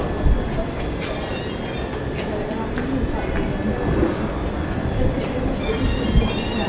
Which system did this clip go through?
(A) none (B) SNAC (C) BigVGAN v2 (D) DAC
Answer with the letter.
A